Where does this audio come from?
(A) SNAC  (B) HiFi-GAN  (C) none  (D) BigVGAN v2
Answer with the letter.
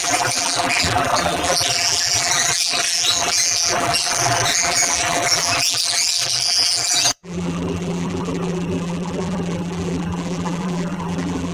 D